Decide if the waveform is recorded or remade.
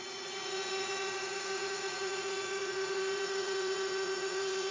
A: remade